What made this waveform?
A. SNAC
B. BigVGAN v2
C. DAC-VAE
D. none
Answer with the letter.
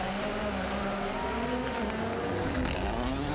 D